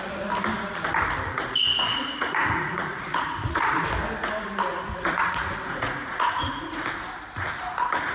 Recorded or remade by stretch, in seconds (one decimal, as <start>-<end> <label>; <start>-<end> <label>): 0.0-1.6 recorded; 1.6-3.8 remade; 3.8-4.7 recorded; 4.7-6.8 remade; 6.8-8.1 recorded